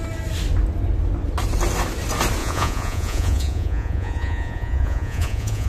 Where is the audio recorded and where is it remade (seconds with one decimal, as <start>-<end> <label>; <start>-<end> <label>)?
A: 0.0-2.4 recorded; 2.4-5.7 remade